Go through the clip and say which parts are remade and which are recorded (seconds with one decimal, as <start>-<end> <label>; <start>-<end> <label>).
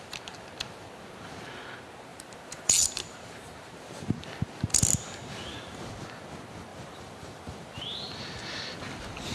0.0-2.1 recorded; 2.1-4.3 remade; 4.3-6.7 recorded; 6.7-8.8 remade; 8.8-9.3 recorded